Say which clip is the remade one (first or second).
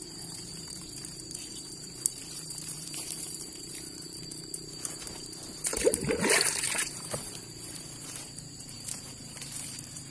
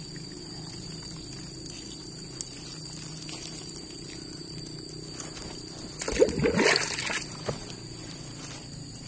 first